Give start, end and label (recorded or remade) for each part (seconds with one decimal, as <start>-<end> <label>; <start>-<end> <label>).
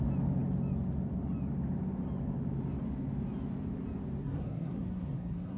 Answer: 0.0-4.2 recorded; 4.2-5.6 remade